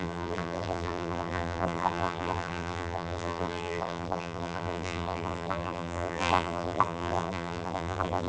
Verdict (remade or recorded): remade